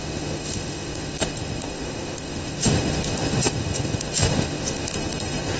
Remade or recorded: remade